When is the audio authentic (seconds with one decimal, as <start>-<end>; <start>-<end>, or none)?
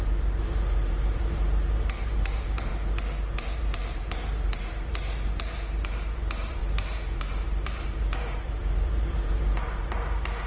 2.7-3.4